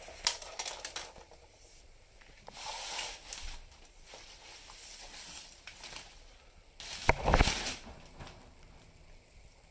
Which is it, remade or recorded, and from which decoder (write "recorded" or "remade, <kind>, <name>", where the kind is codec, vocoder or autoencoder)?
recorded